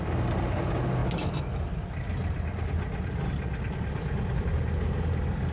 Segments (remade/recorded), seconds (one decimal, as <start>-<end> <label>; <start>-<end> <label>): 0.0-5.5 recorded